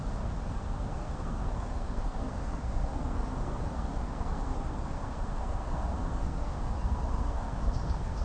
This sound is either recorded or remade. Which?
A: remade